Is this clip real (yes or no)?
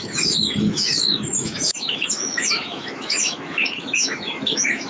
no